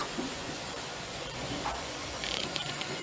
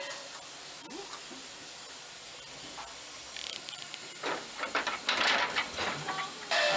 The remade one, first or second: first